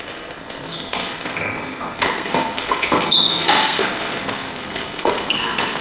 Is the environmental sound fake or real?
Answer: fake